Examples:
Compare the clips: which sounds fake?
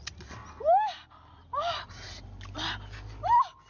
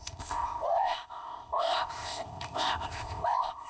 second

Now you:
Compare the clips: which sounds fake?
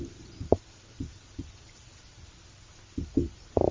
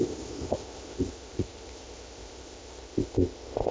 second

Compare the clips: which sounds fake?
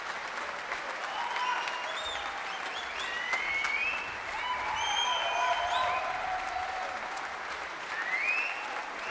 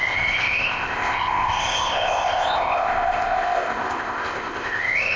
second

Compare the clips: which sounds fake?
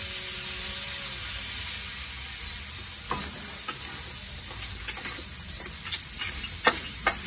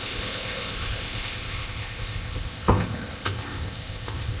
second